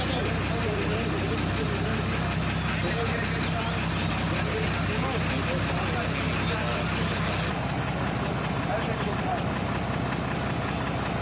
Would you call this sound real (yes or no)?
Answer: yes